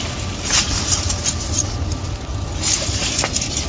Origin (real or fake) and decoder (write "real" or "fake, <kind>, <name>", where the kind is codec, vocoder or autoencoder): real